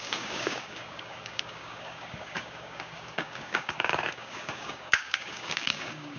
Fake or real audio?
fake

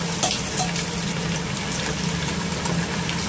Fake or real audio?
real